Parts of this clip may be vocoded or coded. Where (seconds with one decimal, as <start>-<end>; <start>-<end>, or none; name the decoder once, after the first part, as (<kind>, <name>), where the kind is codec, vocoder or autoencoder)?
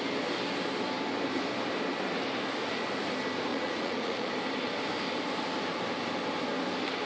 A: 3.5-4.3 (vocoder, Vocos)